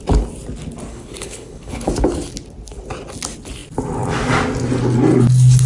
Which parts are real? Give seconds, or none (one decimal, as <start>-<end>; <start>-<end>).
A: 0.0-0.9; 1.9-5.7